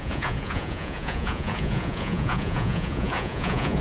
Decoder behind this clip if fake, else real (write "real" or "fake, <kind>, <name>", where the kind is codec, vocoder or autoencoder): fake, vocoder, Vocos